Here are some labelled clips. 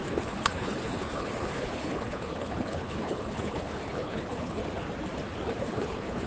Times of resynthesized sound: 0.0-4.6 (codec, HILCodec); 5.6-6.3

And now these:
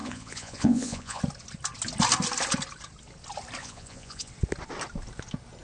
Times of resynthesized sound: 0.0-1.2 (vocoder, Vocos); 3.6-4.3

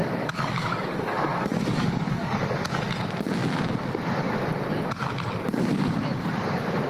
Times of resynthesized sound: 0.0-2.7 (codec, DAC)

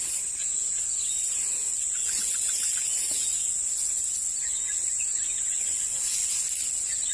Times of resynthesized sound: 0.4-1.4 (vocoder, Vocos); 2.0-3.7